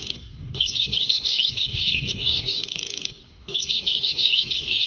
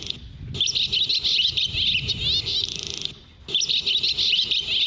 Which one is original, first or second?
second